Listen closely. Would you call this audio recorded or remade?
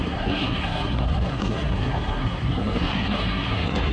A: remade